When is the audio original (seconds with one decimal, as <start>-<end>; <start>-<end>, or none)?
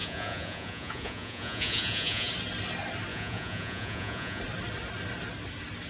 2.3-3.1; 4.4-5.9